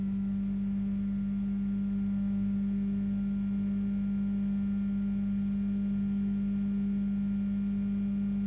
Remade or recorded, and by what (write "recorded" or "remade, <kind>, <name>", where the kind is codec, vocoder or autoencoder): recorded